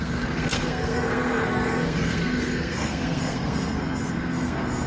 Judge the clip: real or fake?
fake